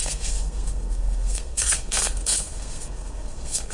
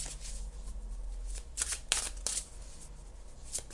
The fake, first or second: first